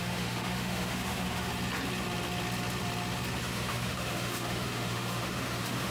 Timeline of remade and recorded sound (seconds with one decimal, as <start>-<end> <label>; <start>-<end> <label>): 0.0-1.5 remade; 1.5-3.4 recorded; 3.4-5.9 remade